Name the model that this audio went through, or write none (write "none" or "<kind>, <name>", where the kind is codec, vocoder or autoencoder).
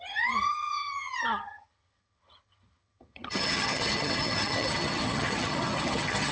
vocoder, HiFi-GAN